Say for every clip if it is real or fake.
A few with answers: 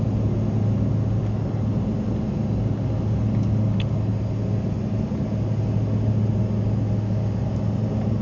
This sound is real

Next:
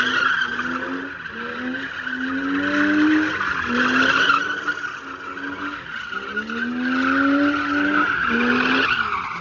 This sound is real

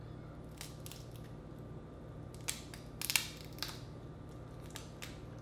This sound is real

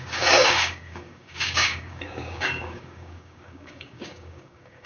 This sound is fake